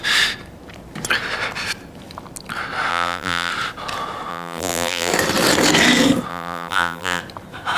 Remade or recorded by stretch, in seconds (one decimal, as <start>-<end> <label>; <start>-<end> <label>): 0.0-2.9 recorded; 2.9-3.5 remade; 3.5-4.3 recorded; 4.3-5.1 remade; 5.1-6.3 recorded; 6.3-7.2 remade; 7.2-7.8 recorded